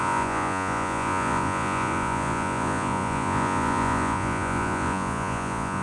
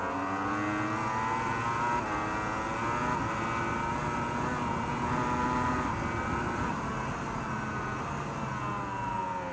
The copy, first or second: first